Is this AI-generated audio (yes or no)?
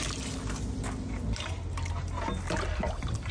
no